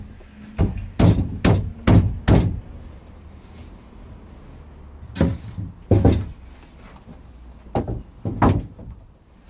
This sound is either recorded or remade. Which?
recorded